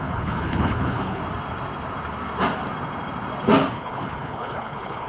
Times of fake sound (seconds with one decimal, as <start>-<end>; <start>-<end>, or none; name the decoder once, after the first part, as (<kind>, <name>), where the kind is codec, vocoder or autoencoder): 0.0-1.2 (codec, HILCodec); 3.7-5.1